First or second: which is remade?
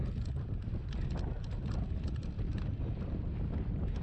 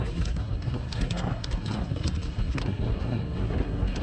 second